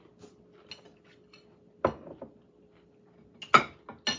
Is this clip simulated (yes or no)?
no